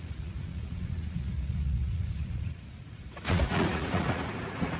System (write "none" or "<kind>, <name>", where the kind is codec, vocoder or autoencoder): vocoder, Vocos